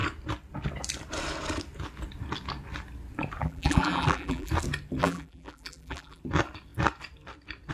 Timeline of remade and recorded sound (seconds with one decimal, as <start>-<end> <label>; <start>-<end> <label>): 0.0-3.4 recorded; 3.4-4.5 remade; 4.5-5.0 recorded; 5.0-6.2 remade; 6.2-7.7 recorded